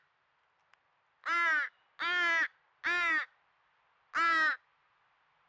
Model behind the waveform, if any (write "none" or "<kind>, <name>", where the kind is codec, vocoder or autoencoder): none